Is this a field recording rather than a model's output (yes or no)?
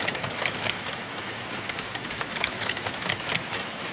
no